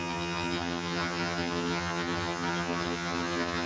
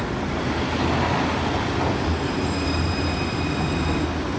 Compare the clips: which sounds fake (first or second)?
first